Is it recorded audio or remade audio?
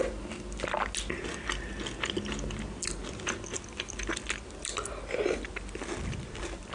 recorded